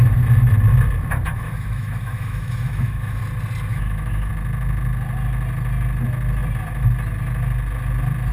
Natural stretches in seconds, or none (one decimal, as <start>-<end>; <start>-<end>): 0.0-1.3; 3.2-3.7; 4.3-8.3